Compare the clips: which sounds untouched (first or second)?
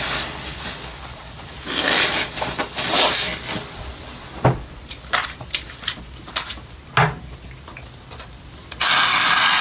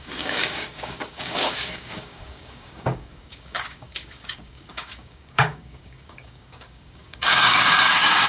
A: first